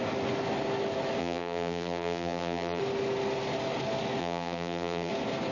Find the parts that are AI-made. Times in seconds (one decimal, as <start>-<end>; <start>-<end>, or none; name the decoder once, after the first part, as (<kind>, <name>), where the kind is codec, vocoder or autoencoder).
1.2-2.8 (vocoder, BigVGAN v2); 4.2-5.1